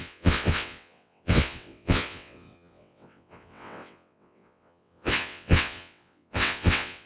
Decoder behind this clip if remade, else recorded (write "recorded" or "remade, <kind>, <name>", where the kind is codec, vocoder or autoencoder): remade, vocoder, WaveNeXt